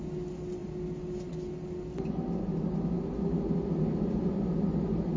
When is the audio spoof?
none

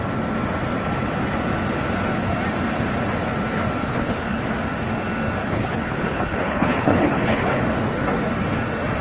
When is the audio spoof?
3.8-4.4 (codec, HILCodec); 5.4-7.6

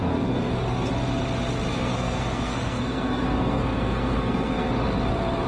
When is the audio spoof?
0.0-0.5 (codec, SNAC); 1.7-4.7

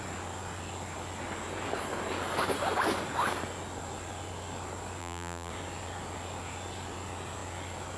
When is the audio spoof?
5.0-5.5 (vocoder, BigVGAN v2)

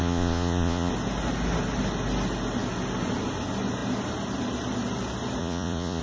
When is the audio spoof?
0.0-0.9 (vocoder, Vocos); 5.4-6.0